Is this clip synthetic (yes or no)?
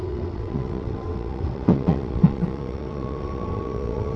yes